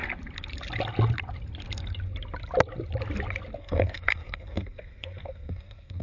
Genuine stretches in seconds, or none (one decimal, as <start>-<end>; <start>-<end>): 0.0-3.6